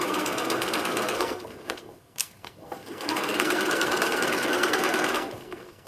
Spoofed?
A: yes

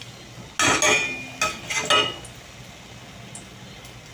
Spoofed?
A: no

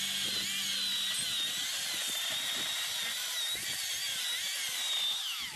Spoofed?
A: no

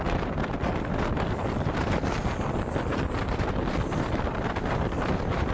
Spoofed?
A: no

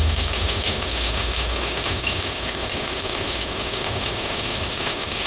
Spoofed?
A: yes